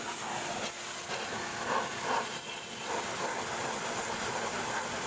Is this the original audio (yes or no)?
yes